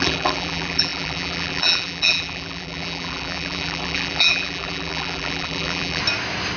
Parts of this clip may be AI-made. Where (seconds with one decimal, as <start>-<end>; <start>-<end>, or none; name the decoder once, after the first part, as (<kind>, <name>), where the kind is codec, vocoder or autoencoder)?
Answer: 0.0-6.0 (vocoder, BigVGAN v2)